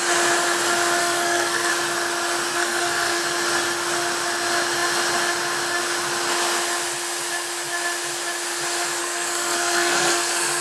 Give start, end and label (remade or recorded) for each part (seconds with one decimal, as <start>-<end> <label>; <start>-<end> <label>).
0.0-1.0 recorded; 1.0-1.7 remade; 1.7-2.5 recorded; 2.5-3.2 remade; 3.2-9.0 recorded; 9.0-10.6 remade